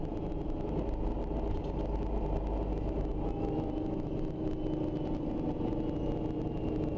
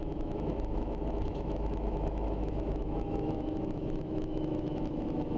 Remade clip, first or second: second